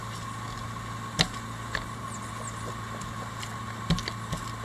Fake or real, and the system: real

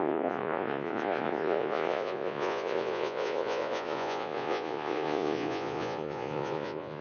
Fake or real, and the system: fake, vocoder, Vocos